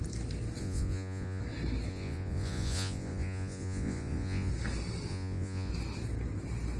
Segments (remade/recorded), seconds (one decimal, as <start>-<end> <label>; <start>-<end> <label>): 0.0-0.6 recorded; 0.6-1.4 remade; 1.4-1.9 recorded; 1.9-4.5 remade; 4.5-5.1 recorded; 5.1-5.7 remade; 5.7-6.8 recorded